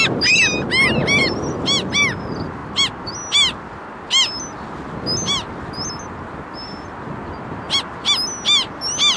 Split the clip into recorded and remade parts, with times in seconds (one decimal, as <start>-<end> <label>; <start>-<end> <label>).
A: 0.0-9.2 recorded